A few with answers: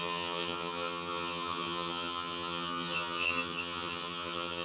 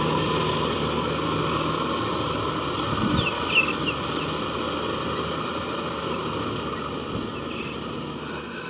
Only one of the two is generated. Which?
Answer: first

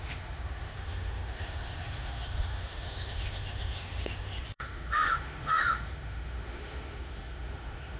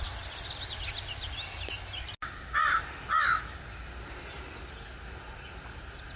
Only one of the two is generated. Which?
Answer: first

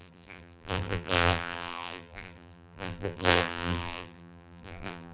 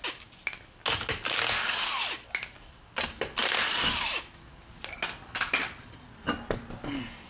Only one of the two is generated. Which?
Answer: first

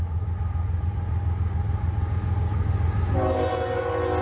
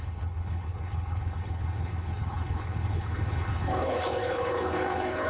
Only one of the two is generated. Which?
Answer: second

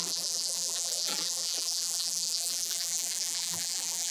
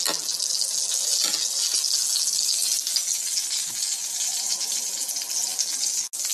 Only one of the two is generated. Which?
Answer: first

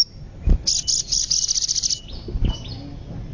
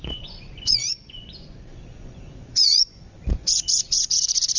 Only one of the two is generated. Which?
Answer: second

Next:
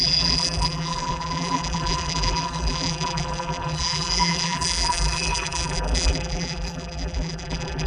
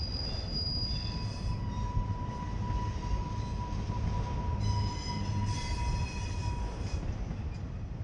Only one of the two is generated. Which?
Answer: first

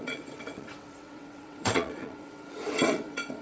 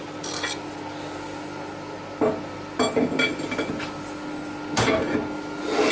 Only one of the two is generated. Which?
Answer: first